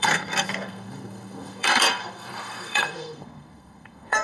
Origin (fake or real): fake